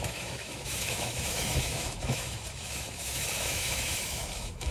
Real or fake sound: fake